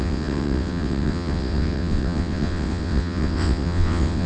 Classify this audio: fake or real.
fake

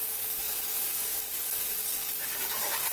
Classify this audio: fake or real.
fake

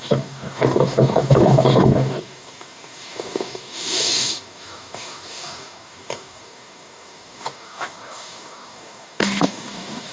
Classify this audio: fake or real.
fake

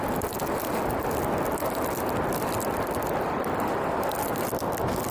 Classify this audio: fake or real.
real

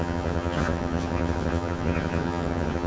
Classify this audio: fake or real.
fake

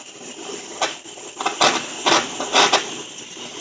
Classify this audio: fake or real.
real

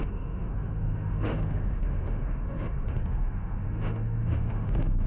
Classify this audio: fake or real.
fake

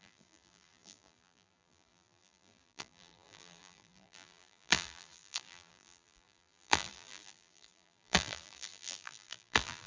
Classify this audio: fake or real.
fake